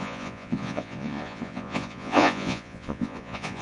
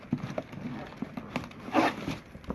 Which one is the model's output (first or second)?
first